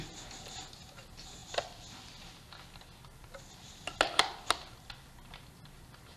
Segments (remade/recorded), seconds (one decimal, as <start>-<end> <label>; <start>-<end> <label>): 0.0-6.2 recorded

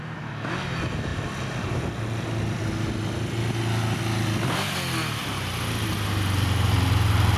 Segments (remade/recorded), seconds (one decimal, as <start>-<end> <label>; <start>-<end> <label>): 0.0-7.4 recorded